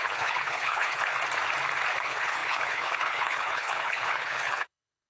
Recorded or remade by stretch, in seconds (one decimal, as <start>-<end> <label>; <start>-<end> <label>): 0.0-1.1 remade; 1.1-1.9 recorded; 1.9-5.1 remade